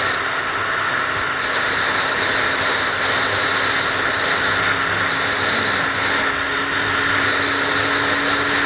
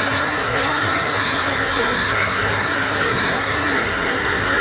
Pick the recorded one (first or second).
first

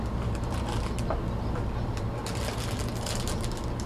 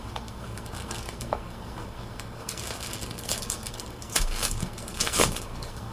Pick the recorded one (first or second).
first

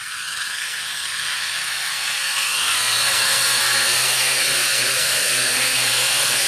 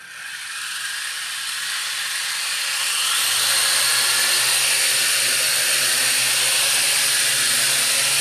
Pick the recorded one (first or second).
second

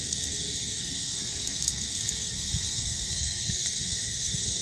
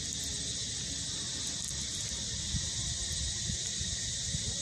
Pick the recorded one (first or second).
second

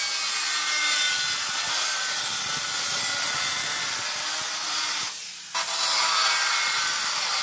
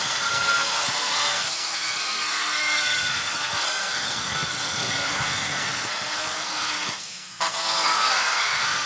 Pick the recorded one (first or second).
first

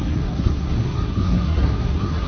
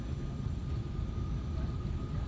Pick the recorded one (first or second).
second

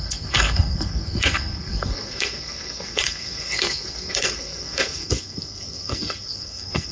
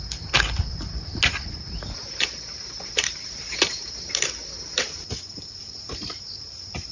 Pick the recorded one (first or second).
second